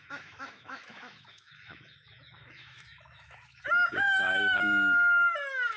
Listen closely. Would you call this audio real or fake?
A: fake